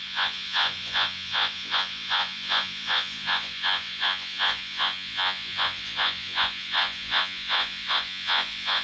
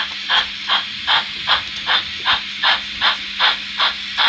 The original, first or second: second